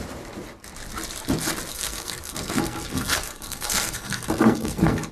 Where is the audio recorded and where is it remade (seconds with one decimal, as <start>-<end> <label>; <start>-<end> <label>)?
0.0-1.7 recorded; 1.7-5.1 remade